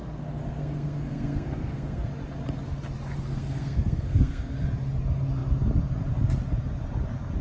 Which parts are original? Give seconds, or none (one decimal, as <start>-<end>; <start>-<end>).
2.1-3.3; 4.5-7.4